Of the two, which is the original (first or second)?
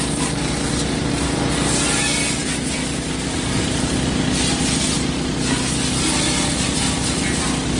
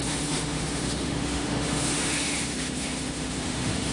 first